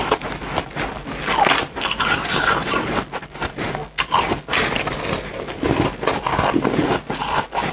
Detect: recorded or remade recorded